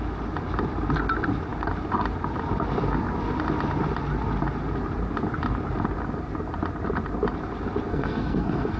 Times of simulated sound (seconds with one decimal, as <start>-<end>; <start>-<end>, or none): 7.9-8.8